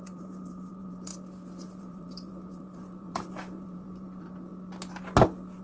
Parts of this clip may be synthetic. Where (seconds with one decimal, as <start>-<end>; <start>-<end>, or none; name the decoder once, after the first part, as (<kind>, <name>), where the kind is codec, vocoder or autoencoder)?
0.0-1.1 (vocoder, BigVGAN v2); 1.8-4.5